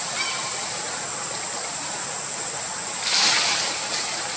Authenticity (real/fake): real